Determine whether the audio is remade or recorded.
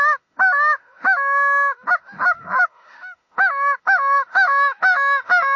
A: remade